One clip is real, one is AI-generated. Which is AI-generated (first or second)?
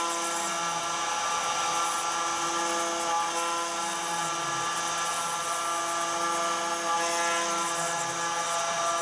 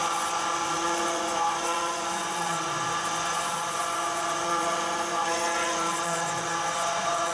second